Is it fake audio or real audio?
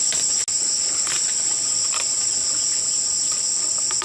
real